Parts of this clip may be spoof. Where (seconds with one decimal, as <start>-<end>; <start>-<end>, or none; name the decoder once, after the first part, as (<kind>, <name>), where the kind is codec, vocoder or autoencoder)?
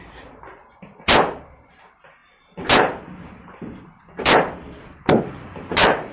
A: none